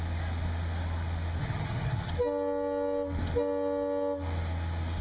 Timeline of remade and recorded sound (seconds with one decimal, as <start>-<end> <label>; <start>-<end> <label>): 0.0-1.4 recorded; 1.4-2.1 remade; 2.1-5.0 recorded